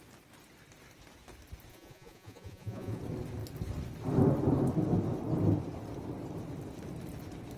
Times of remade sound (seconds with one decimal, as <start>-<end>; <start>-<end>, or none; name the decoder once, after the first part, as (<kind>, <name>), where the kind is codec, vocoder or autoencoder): 1.7-3.0 (vocoder, Vocos)